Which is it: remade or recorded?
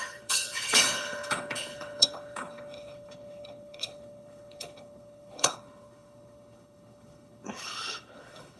remade